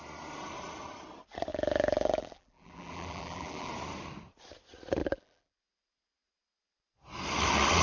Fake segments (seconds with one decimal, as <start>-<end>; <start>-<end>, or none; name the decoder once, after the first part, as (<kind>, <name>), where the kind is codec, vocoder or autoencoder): 1.5-3.7 (vocoder, BigVGAN v2); 5.0-5.6